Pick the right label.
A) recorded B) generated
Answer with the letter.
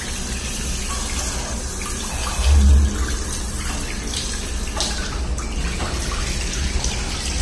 A